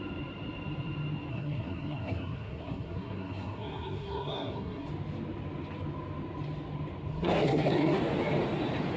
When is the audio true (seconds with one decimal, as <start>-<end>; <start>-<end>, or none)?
0.0-1.3; 4.9-7.1; 8.0-9.0